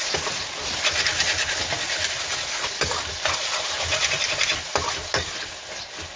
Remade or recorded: recorded